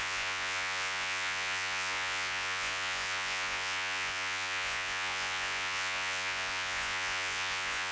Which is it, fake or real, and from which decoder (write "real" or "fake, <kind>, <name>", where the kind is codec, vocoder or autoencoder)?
fake, vocoder, Vocos